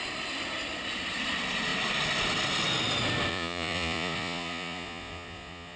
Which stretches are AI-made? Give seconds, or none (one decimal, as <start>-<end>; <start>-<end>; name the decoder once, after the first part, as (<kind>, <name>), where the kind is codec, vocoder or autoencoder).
3.3-5.8 (vocoder, Vocos)